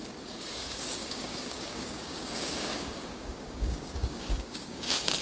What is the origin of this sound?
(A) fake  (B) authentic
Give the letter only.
A